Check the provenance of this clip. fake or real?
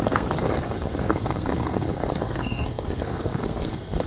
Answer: fake